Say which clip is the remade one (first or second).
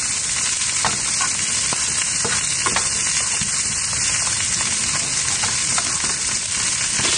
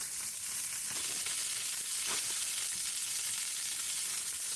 first